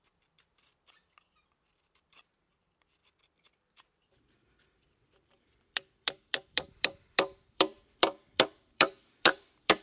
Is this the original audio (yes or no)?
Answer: no